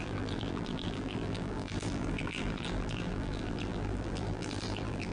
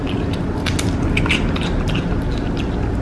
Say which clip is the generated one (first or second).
first